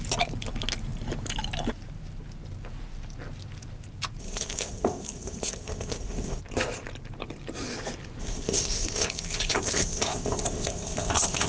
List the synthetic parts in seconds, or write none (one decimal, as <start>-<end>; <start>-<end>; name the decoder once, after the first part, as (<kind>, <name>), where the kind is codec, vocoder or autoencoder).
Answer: 4.2-6.4 (codec, ZipCodec); 8.2-11.5